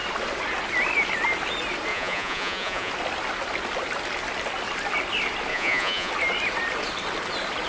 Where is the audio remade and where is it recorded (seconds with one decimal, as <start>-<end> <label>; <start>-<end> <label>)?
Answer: 0.0-1.9 recorded; 1.9-2.9 remade; 2.9-5.5 recorded; 5.5-6.1 remade; 6.1-7.7 recorded